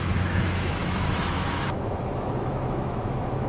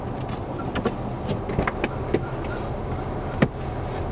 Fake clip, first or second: first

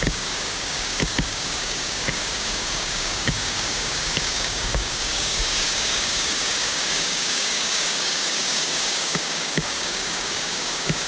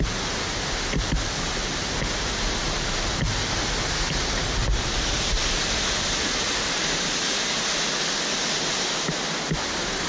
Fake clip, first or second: first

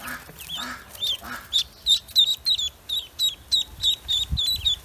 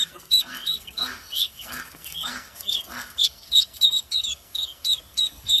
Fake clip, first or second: second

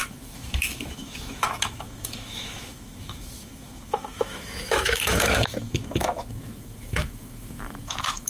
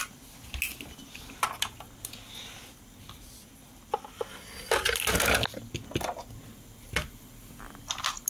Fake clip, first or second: first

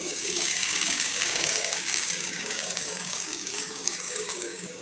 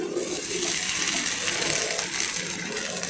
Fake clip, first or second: first